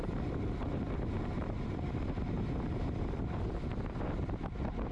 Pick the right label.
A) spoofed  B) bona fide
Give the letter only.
B